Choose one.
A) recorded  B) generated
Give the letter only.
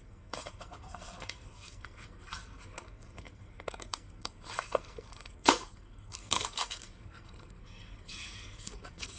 B